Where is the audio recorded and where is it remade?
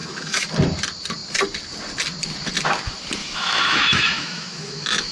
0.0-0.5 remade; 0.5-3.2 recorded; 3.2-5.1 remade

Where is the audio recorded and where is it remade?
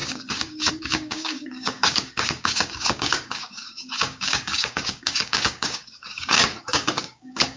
0.0-7.6 remade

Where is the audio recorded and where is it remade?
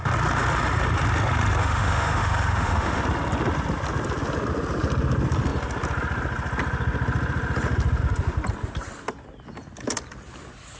0.0-1.6 recorded; 1.6-3.0 remade; 3.0-10.8 recorded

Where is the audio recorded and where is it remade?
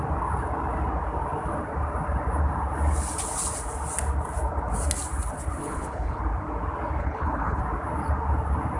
0.0-5.6 recorded; 5.6-6.2 remade; 6.2-7.0 recorded; 7.0-7.6 remade; 7.6-8.8 recorded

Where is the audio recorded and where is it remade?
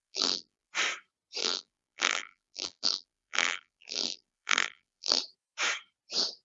0.0-0.7 remade; 0.7-1.4 recorded; 1.4-5.2 remade; 5.2-6.4 recorded